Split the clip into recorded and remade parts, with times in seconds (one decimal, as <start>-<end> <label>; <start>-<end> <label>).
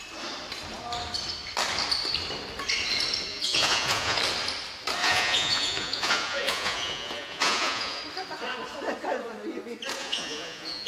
0.0-3.3 recorded; 3.3-4.2 remade; 4.2-5.0 recorded; 5.0-8.0 remade; 8.0-10.0 recorded; 10.0-10.9 remade